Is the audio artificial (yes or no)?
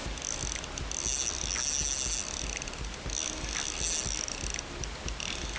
no